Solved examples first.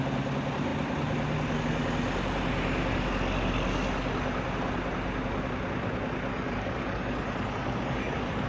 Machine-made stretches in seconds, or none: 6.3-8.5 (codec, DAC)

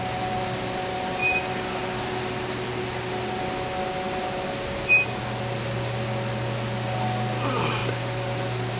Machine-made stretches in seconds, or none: none

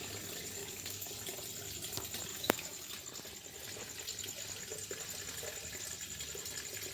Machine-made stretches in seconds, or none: 0.6-1.1 (codec, DAC); 2.3-2.9

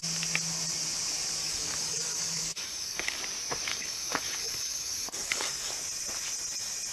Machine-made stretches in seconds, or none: 1.4-3.2 (codec, DAC); 3.7-5.7

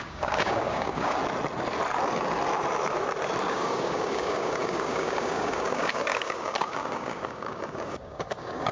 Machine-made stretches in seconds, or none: 0.0-1.2 (codec, DAC); 3.5-8.7

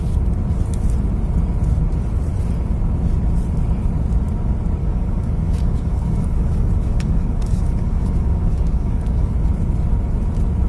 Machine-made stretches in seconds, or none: 4.8-9.3 (codec, DAC)

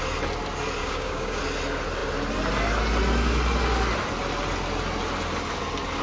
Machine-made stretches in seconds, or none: 0.8-1.4 (codec, DAC)